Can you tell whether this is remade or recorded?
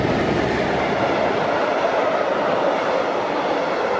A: recorded